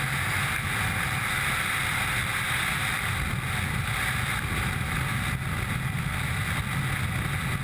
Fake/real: real